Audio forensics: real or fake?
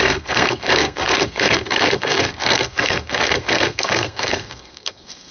fake